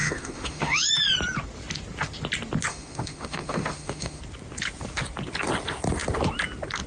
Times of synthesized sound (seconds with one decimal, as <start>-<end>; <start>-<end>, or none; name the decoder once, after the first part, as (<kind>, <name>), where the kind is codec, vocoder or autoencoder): 0.0-0.9 (autoencoder, DAC-VAE); 2.7-4.2